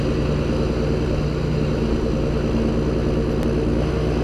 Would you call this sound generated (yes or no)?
no